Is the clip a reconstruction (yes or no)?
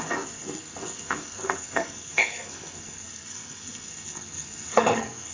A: yes